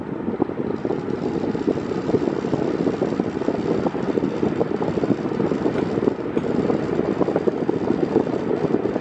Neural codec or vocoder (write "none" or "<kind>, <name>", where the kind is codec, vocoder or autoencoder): none